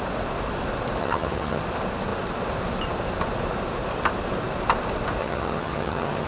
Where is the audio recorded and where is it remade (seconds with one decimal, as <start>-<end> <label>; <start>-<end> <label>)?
0.0-1.0 recorded; 1.0-1.6 remade; 1.6-5.2 recorded; 5.2-6.3 remade